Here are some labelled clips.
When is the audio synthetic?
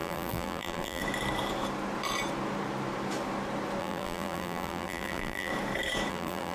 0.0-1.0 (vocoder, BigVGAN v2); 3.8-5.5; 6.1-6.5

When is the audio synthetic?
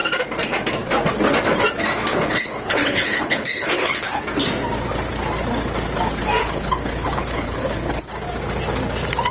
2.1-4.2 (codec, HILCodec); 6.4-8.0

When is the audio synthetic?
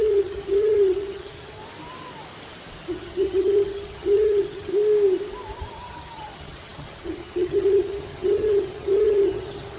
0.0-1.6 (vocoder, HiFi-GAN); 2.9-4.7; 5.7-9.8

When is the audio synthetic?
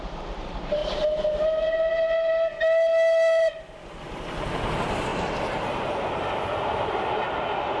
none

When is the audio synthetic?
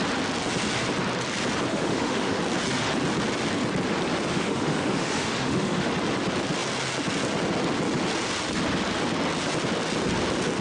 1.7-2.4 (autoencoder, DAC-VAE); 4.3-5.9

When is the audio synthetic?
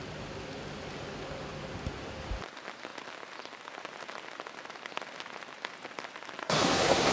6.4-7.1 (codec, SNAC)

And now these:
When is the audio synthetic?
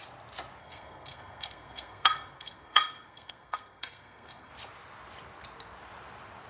0.6-4.5 (codec, SNAC)